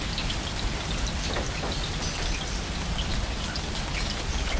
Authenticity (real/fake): real